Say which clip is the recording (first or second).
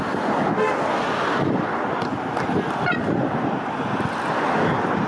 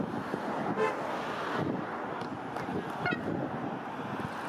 second